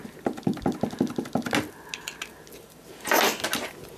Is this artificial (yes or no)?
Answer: no